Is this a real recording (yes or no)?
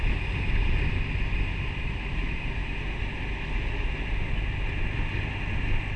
yes